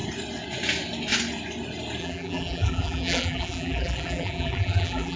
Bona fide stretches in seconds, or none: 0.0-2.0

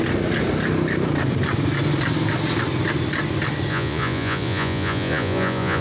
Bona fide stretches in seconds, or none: 0.0-3.7

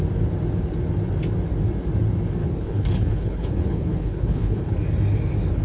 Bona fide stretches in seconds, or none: 0.0-2.4; 4.7-5.6

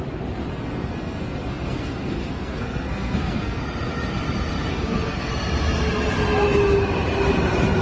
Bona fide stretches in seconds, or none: 0.0-0.5; 3.6-4.7; 5.3-7.8

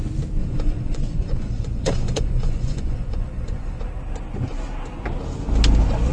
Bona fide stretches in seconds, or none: 0.0-0.4; 3.8-6.1

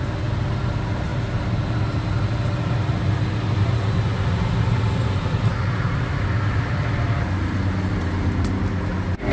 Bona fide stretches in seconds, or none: 0.0-9.3

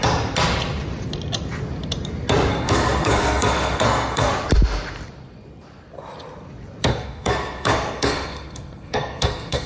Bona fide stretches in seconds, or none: 0.0-2.5; 4.3-6.9